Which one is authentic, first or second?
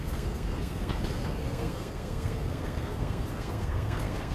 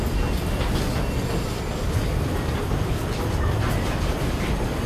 second